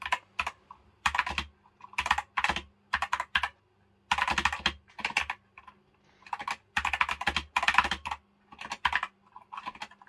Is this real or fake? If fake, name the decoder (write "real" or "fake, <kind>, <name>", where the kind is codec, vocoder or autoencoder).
real